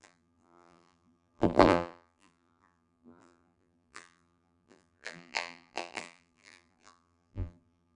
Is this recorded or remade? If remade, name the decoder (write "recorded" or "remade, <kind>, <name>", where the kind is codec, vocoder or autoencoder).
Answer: remade, vocoder, BigVGAN v2